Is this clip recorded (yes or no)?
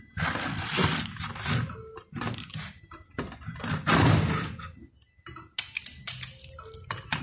yes